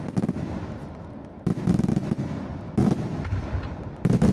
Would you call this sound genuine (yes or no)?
yes